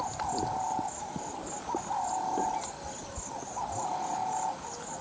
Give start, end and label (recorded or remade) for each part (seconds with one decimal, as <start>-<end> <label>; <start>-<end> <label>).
0.0-5.0 recorded

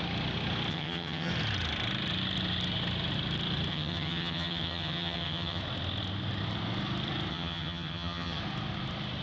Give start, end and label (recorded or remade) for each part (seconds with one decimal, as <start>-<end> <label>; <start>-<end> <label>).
0.0-0.7 recorded; 0.7-1.3 remade; 1.3-3.7 recorded; 3.7-5.6 remade; 5.6-7.3 recorded; 7.3-8.4 remade; 8.4-9.2 recorded

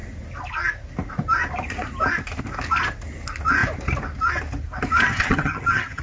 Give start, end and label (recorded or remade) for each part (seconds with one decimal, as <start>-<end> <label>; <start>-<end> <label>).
0.0-5.1 recorded; 5.1-6.0 remade